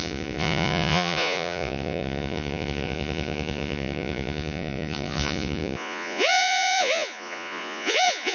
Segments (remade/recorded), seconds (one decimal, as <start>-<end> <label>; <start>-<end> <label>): 0.0-8.3 remade